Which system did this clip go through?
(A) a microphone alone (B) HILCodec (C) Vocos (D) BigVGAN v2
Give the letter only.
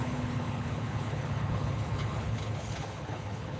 B